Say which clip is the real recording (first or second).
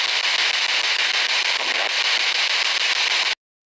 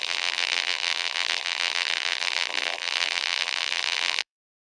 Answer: first